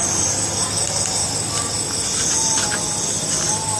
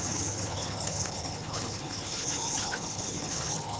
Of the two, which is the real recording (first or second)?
first